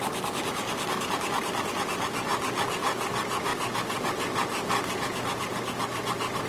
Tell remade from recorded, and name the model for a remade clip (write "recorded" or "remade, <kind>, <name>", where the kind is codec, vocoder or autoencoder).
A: recorded